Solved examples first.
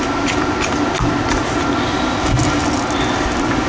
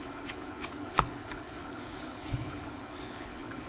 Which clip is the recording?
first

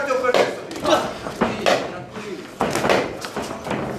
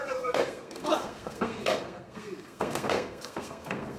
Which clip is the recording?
first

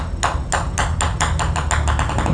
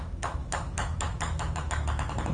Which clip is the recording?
first